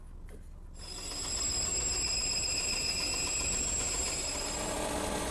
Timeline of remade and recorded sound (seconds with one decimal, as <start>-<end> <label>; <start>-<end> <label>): 0.0-5.3 recorded